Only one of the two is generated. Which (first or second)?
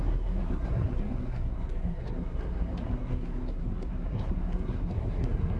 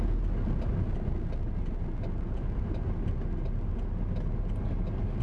first